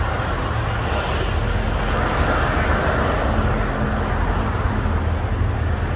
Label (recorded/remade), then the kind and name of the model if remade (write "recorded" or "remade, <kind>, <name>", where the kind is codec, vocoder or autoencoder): recorded